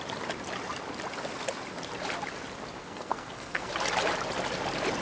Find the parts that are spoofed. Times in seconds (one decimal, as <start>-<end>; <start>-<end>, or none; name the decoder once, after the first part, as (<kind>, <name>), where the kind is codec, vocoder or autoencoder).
2.8-3.7 (codec, SNAC)